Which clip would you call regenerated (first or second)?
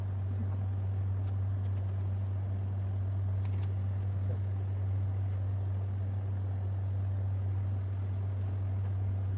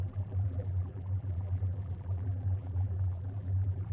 second